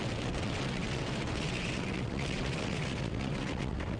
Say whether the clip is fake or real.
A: fake